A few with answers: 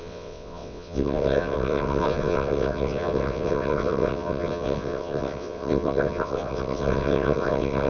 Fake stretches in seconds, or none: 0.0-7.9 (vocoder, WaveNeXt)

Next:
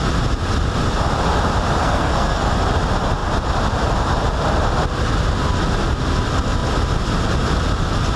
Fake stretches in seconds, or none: 1.8-2.4 (codec, SNAC)

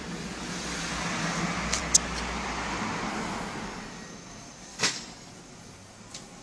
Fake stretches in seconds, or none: 4.7-5.3 (codec, DAC)

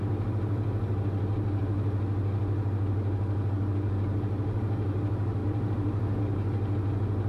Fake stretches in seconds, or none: 5.4-6.2 (vocoder, BigVGAN v2)

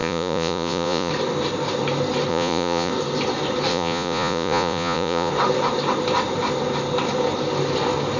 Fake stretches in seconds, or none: 0.0-1.1 (vocoder, Vocos); 2.3-2.9; 3.7-5.3

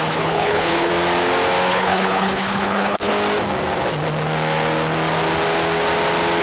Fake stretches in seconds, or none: 0.0-0.9 (codec, HILCodec); 1.7-3.1

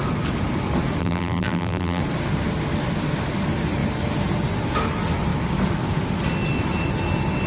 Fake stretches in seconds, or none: 1.0-2.0 (vocoder, BigVGAN v2)

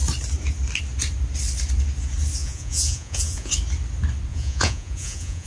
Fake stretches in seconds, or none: 2.4-3.5 (vocoder, Vocos); 4.3-5.5